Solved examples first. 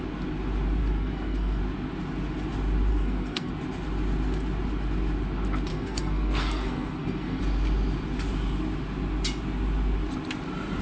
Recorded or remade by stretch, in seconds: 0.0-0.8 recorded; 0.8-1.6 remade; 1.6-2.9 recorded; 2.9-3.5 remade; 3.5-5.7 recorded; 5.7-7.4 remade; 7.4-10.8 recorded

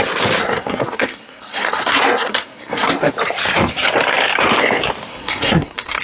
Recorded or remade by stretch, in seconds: 0.0-0.4 recorded; 0.4-3.1 remade; 3.1-5.1 recorded; 5.1-6.0 remade

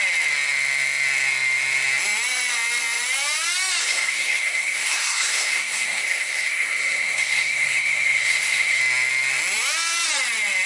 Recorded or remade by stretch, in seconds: 0.0-3.8 recorded; 3.8-8.8 remade; 8.8-10.7 recorded